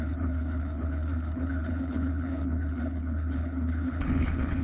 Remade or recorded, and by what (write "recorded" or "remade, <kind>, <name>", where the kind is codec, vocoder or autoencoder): remade, codec, HILCodec